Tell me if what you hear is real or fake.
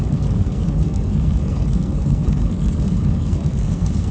fake